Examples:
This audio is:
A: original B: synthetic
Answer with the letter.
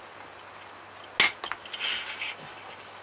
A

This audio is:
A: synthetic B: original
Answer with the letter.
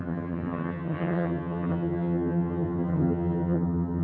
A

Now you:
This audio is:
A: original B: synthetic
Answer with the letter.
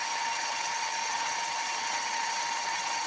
B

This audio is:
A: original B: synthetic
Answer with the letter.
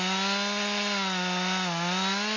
A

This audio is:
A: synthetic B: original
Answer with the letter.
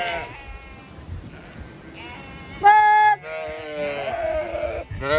B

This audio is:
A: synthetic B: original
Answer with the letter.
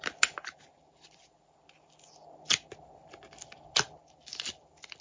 B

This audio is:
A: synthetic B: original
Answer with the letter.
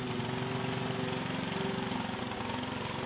B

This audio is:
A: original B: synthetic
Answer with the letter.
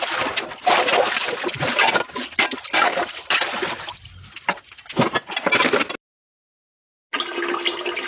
A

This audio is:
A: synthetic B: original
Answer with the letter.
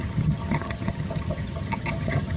A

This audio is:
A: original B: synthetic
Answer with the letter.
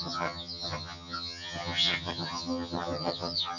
B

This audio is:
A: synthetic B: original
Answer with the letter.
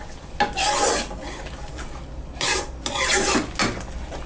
B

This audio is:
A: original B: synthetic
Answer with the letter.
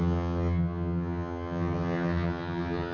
B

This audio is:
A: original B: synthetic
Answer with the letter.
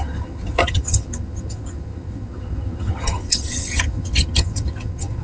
B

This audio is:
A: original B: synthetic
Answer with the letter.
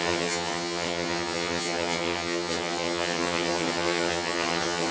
B